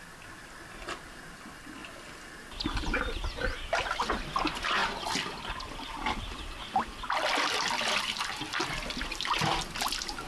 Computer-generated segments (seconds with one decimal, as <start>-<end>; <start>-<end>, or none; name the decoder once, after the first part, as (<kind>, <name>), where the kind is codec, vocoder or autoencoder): none